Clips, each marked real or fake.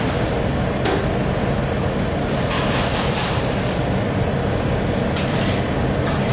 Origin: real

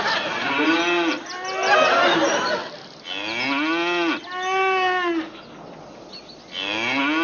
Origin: real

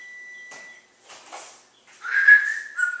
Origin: real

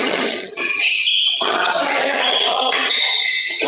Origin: fake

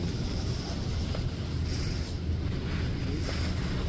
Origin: real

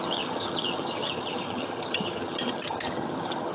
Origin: fake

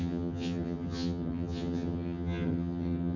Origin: fake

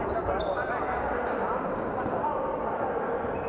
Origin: real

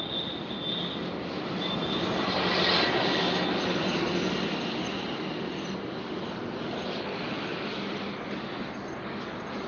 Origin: real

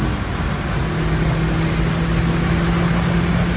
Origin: real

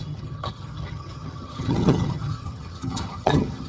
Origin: fake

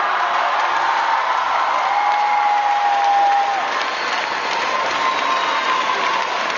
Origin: real